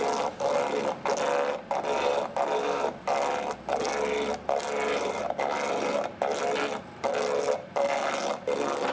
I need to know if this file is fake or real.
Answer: real